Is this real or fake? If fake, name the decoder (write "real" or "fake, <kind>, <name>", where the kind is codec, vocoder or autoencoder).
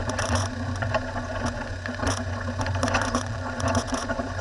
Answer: fake, vocoder, Vocos